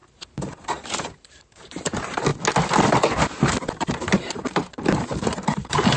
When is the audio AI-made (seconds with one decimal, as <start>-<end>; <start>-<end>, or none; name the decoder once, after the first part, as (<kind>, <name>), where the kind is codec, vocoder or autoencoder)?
0.0-2.3 (vocoder, BigVGAN v2); 3.9-6.0